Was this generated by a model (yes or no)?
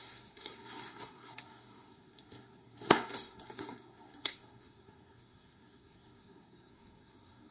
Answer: yes